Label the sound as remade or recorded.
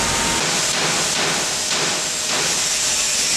recorded